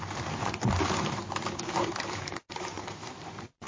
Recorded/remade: remade